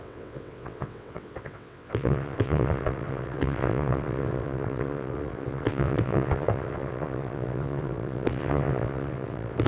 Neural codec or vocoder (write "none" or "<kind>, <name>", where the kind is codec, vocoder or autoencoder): vocoder, WaveNeXt